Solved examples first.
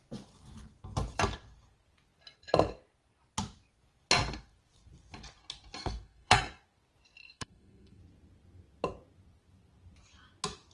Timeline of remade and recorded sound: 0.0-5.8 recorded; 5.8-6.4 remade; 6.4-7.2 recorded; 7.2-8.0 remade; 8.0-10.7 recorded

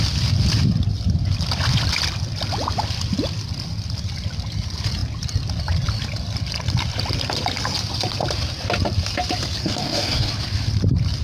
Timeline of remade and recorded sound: 0.0-9.6 recorded; 9.6-10.3 remade; 10.3-11.2 recorded

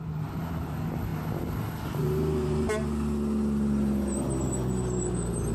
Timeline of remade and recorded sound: 0.0-5.5 recorded

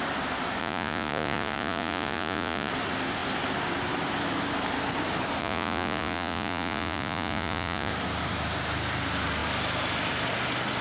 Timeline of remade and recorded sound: 0.0-0.6 recorded; 0.6-2.7 remade; 2.7-5.4 recorded; 5.4-7.9 remade; 7.9-10.8 recorded